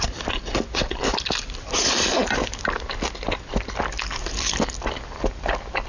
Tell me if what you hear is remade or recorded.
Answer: recorded